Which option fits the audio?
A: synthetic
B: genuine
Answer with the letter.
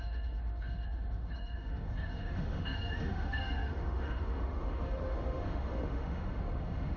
A